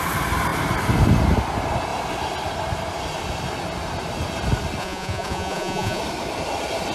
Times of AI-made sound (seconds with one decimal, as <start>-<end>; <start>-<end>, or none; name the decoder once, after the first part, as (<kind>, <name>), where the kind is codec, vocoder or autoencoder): 4.8-6.0 (vocoder, Vocos)